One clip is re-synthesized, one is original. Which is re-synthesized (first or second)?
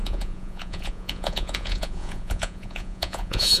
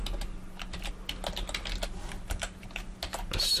first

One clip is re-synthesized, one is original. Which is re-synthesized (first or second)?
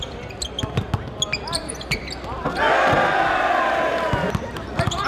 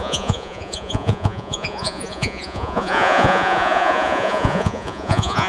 second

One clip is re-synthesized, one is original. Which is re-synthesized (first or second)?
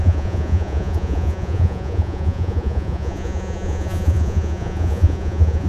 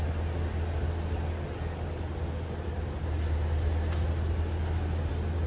first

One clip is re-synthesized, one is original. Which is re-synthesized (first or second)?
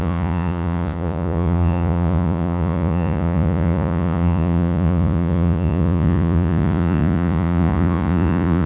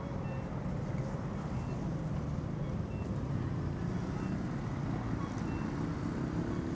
first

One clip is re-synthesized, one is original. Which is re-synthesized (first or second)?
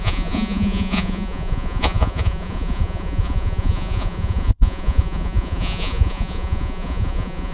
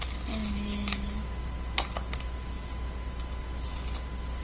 first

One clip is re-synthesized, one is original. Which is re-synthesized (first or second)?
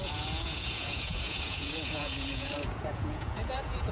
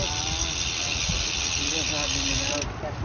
first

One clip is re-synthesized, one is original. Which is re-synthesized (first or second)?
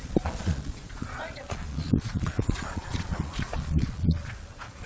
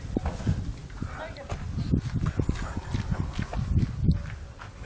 first